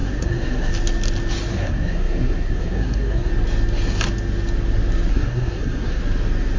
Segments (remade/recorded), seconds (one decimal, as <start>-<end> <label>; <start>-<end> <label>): 0.0-0.7 remade; 0.7-1.5 recorded; 1.5-3.3 remade; 3.3-5.1 recorded; 5.1-6.0 remade; 6.0-6.6 recorded